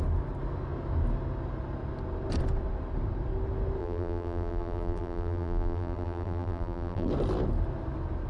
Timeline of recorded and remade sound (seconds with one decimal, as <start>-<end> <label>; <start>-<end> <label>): 0.0-3.8 recorded; 3.8-7.1 remade; 7.1-8.3 recorded